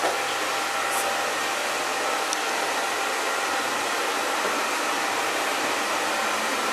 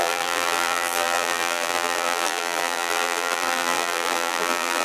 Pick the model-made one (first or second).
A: second